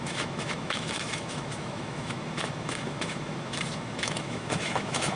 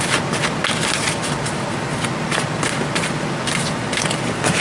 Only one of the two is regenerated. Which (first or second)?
first